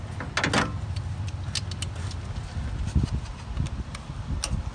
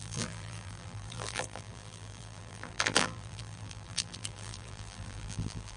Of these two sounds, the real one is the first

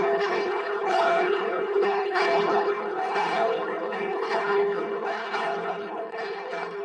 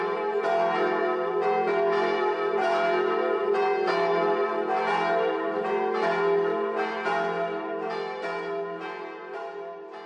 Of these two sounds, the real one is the second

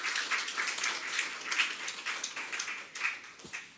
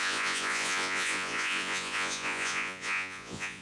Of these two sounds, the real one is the first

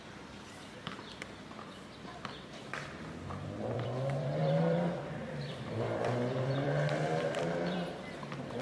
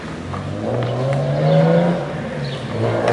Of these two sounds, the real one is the second